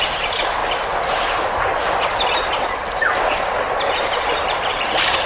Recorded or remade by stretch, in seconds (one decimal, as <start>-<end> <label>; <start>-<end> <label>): 0.0-0.6 remade; 0.6-3.8 recorded; 3.8-5.3 remade

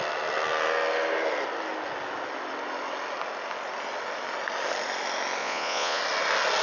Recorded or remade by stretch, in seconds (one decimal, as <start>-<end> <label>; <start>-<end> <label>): 0.0-5.4 recorded; 5.4-6.0 remade; 6.0-6.6 recorded